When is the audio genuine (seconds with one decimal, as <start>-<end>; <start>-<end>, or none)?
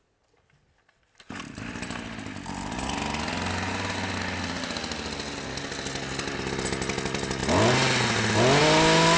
0.0-9.2